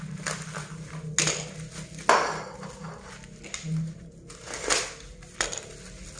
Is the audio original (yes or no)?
yes